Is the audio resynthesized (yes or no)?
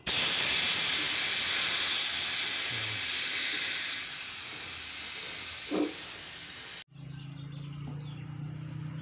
no